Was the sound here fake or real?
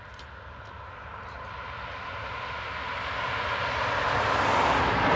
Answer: real